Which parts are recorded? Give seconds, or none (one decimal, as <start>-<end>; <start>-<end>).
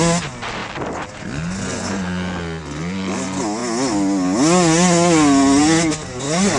0.0-6.6